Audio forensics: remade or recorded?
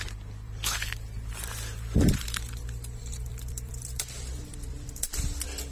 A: remade